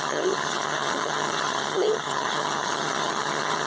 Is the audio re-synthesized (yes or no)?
yes